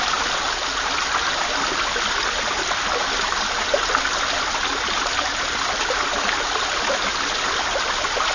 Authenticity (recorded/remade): recorded